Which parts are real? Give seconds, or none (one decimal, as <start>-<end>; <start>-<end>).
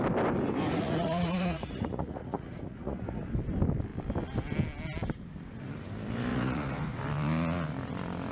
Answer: 0.0-0.8; 3.2-6.3; 7.0-8.3